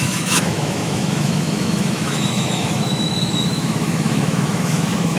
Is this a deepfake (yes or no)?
yes